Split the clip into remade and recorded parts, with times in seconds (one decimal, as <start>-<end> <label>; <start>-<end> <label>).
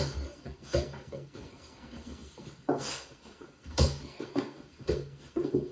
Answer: 0.0-5.7 remade